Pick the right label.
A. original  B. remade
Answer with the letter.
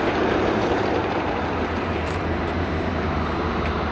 B